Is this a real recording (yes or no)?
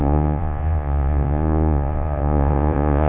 no